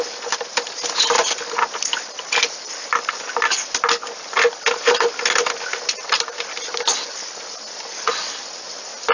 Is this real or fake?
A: real